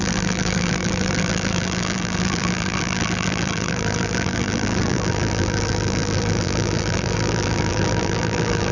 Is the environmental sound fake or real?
fake